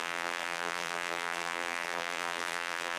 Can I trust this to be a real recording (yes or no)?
no